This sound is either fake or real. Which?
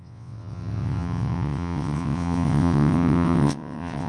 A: fake